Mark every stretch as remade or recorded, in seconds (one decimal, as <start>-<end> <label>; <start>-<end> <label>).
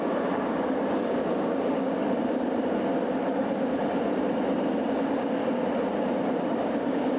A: 0.0-2.0 remade; 2.0-6.2 recorded; 6.2-7.2 remade